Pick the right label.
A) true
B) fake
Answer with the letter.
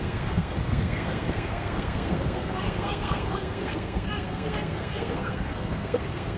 B